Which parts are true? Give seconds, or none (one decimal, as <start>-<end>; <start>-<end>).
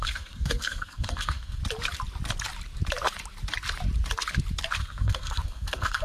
1.6-4.8